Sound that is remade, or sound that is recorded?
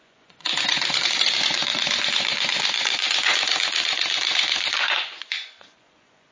remade